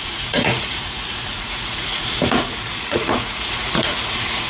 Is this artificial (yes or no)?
yes